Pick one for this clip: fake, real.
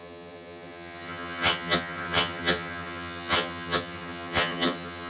fake